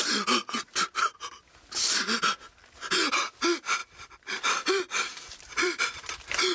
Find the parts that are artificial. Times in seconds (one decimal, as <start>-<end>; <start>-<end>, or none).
3.8-6.1